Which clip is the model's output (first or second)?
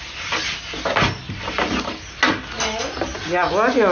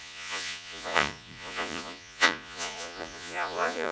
second